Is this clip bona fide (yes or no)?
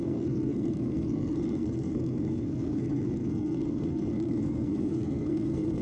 no